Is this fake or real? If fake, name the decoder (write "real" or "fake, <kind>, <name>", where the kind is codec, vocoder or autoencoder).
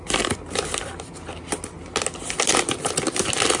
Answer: real